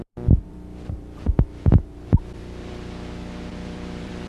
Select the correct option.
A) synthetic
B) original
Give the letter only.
A